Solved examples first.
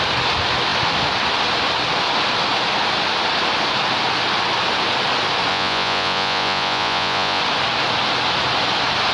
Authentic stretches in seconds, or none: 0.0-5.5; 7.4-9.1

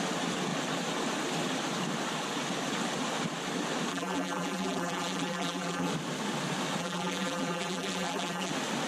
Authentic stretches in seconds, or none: 0.0-3.9; 5.9-6.8; 8.5-8.9

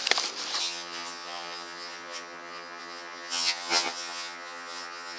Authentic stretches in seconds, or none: 0.0-0.6

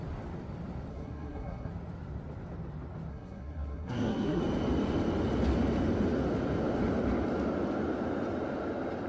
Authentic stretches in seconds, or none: 0.0-0.9; 1.7-3.1; 4.4-9.1

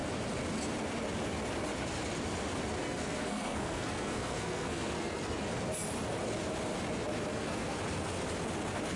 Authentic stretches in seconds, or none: 0.0-2.8; 5.4-7.3; 7.8-9.0

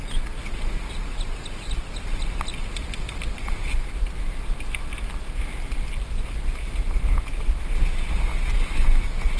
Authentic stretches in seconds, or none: 0.0-2.5; 3.7-9.4